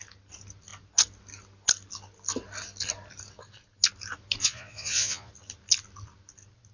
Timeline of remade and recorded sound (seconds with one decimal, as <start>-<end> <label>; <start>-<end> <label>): 0.0-4.4 recorded; 4.4-5.3 remade; 5.3-6.7 recorded